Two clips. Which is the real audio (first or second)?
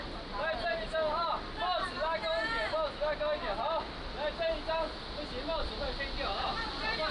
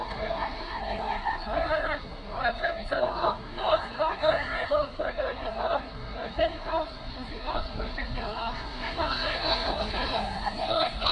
first